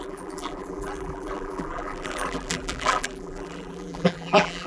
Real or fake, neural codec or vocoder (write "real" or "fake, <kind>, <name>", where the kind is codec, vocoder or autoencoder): fake, vocoder, BigVGAN v2